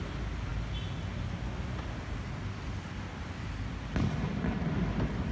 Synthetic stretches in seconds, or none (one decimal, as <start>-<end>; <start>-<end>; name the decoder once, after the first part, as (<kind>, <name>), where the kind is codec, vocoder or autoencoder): none